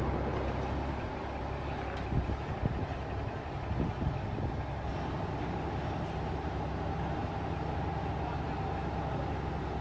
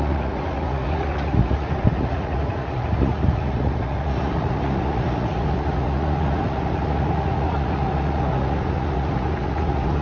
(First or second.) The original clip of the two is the first